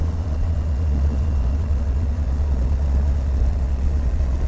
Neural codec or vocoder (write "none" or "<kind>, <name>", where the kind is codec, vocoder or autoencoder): vocoder, Vocos